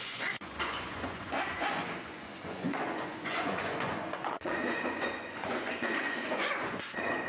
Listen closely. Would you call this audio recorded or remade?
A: remade